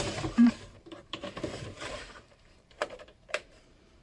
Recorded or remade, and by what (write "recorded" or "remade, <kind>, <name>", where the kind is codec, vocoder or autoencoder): remade, vocoder, BigVGAN v2